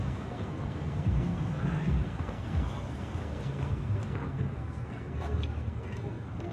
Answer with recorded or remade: remade